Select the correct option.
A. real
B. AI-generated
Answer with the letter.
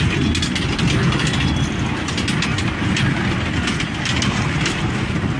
A